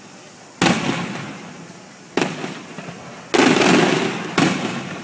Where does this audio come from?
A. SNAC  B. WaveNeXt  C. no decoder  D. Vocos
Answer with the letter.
C